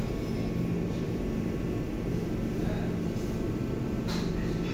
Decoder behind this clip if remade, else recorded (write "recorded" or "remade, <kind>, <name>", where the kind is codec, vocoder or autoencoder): recorded